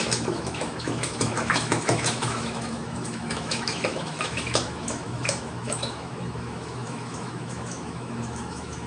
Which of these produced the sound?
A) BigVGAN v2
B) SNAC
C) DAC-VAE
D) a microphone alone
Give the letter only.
C